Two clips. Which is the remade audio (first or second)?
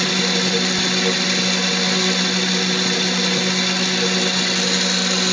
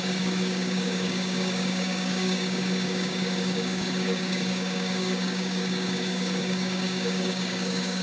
second